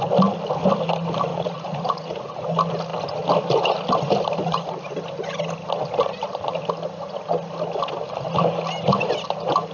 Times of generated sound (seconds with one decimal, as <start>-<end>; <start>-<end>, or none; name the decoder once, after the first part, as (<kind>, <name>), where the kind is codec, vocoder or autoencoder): 1.3-2.4 (vocoder, Vocos)